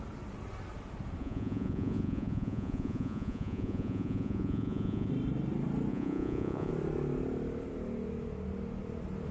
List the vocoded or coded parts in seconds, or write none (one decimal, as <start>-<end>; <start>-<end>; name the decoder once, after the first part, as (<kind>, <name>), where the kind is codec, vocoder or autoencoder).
1.2-5.1 (vocoder, Vocos); 5.9-6.7